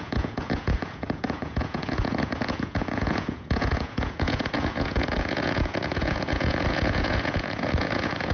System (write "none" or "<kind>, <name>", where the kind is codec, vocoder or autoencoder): vocoder, Vocos